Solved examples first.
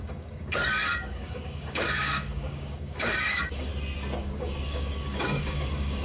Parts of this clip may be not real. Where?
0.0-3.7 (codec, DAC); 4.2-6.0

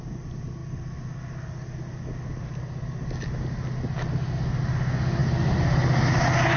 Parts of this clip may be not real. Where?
none

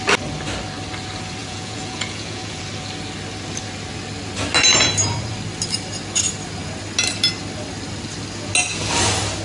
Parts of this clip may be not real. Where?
1.4-2.6 (vocoder, Vocos)

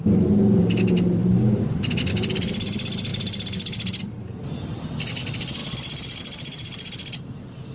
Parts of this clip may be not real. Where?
1.2-1.8 (vocoder, BigVGAN v2)